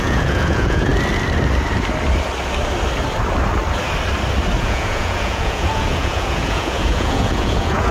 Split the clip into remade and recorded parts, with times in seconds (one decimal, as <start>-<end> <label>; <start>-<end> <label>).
0.0-0.9 remade; 0.9-4.6 recorded; 4.6-7.9 remade